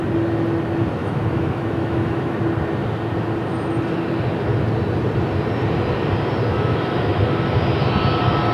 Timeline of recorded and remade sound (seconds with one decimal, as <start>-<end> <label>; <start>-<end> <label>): 0.0-1.0 recorded; 1.0-2.4 remade; 2.4-6.5 recorded; 6.5-7.2 remade; 7.2-8.5 recorded